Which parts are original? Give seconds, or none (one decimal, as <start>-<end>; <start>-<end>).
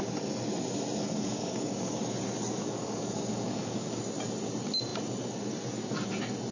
0.0-1.0; 2.0-2.6; 4.0-6.5